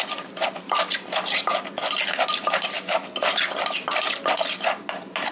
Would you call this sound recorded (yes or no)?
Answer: yes